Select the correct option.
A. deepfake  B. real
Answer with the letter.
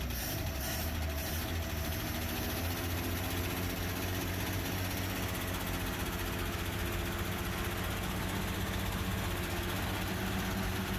B